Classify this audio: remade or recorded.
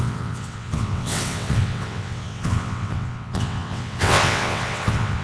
remade